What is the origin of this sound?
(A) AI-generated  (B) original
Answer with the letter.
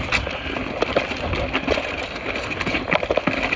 B